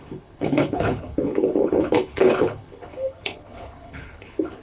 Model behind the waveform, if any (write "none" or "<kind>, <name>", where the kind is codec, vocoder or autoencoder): codec, HILCodec